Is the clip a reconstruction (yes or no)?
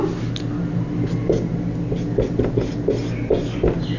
no